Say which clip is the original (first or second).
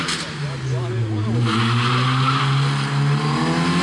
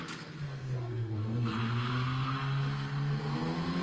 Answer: first